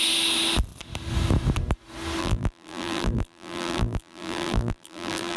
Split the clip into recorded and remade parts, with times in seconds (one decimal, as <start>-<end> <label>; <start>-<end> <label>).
0.0-2.2 recorded; 2.2-5.4 remade